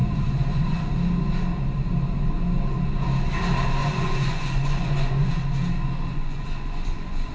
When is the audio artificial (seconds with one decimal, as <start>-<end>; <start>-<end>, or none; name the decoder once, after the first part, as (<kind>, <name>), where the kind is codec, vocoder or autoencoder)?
0.0-0.9 (vocoder, Vocos); 3.8-5.3; 6.1-7.3